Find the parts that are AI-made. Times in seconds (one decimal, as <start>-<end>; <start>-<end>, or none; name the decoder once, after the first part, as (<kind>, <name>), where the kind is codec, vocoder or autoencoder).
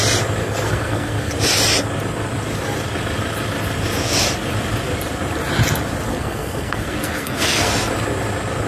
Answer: 0.4-1.3 (codec, SNAC); 6.1-7.7